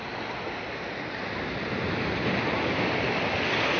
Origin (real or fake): real